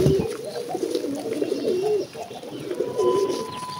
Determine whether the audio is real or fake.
real